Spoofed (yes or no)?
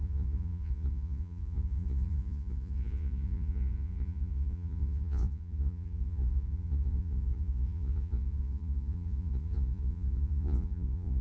yes